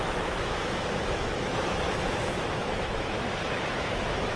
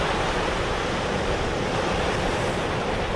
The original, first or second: second